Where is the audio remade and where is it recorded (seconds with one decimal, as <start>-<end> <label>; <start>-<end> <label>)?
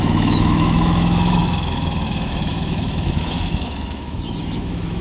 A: 0.0-5.0 remade